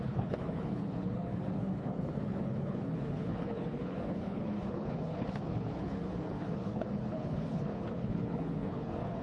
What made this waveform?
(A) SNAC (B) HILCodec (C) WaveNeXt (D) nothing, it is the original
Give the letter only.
B